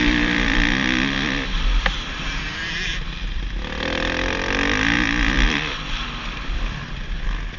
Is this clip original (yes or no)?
no